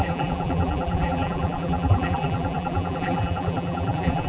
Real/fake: fake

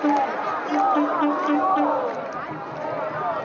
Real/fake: real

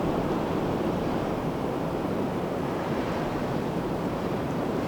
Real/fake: fake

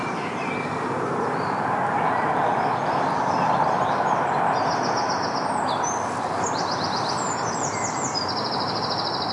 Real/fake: real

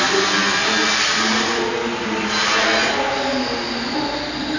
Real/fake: real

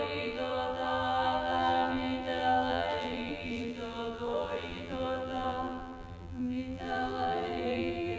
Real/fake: fake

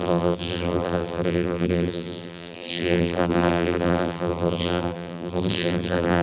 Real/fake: fake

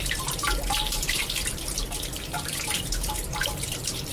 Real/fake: fake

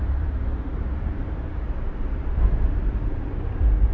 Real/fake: fake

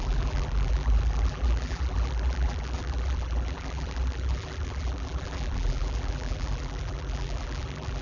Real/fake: fake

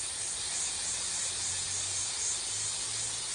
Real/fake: real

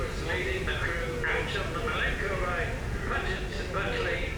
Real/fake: real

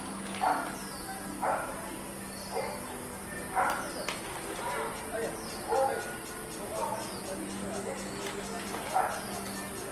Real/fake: real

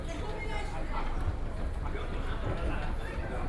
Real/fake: real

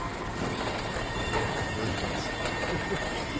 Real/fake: real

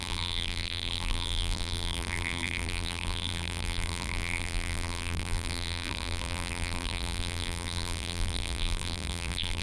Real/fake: fake